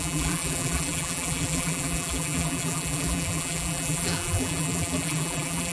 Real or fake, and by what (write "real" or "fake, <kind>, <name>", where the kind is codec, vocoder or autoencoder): fake, vocoder, BigVGAN v2